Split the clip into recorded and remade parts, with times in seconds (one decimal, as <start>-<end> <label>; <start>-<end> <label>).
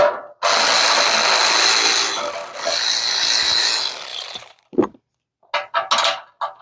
0.0-4.1 recorded; 4.1-5.0 remade; 5.0-6.6 recorded